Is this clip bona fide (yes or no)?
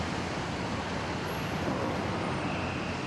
yes